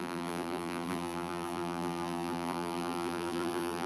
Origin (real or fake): fake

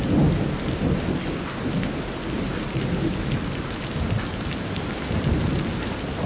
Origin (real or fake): real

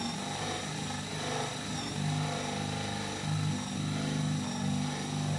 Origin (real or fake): real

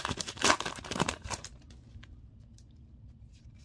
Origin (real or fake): fake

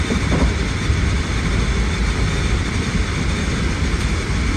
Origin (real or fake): real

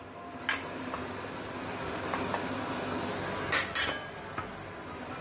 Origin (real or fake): real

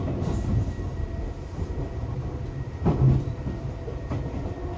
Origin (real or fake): real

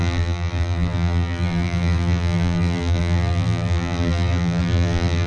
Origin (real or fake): fake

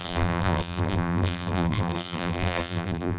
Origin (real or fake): fake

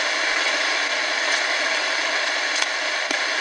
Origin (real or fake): fake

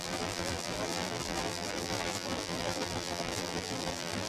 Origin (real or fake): fake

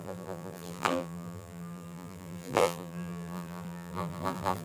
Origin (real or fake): fake